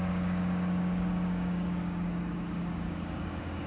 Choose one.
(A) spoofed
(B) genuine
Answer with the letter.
A